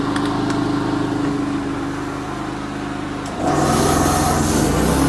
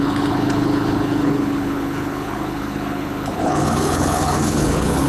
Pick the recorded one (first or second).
first